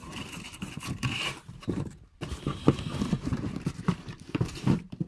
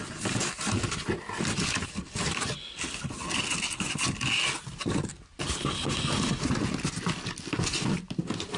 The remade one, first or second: first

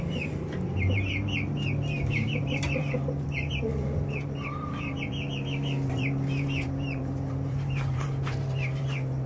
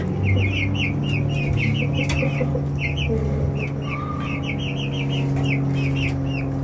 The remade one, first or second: first